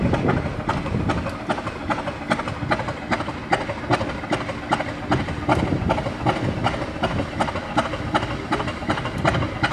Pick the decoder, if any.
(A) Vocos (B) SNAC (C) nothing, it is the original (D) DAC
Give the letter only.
C